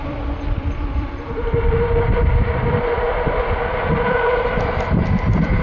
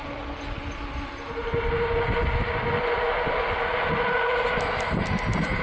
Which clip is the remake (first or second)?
first